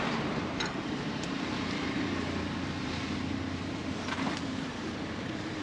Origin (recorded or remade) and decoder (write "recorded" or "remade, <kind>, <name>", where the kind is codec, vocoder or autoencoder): remade, vocoder, BigVGAN v2